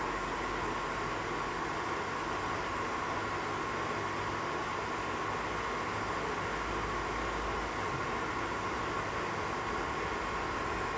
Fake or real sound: real